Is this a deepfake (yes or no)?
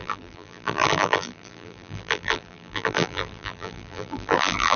yes